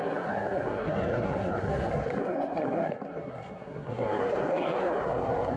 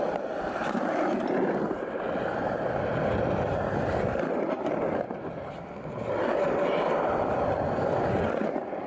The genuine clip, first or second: second